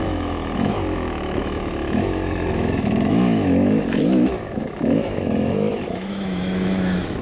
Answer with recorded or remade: remade